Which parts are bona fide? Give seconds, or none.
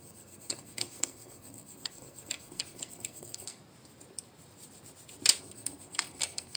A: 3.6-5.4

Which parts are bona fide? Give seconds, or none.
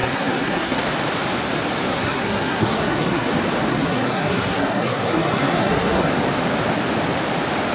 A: 0.8-1.9; 3.3-3.7; 6.1-7.7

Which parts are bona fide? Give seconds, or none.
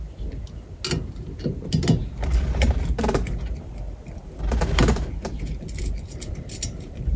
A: 0.0-7.2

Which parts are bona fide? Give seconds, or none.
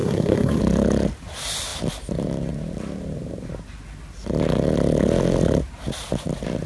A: 0.6-6.7